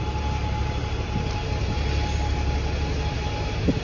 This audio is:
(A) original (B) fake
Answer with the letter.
A